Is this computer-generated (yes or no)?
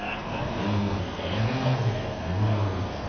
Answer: yes